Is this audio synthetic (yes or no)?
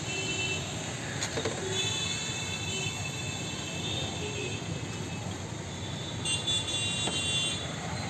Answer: no